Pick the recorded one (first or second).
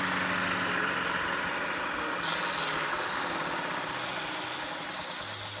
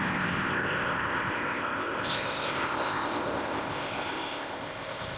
first